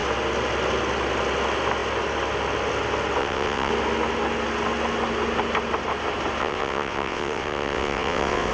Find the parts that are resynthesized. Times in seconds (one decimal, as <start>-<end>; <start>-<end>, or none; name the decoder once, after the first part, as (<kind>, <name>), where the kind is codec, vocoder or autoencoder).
3.2-3.7 (vocoder, WaveNeXt); 6.4-8.5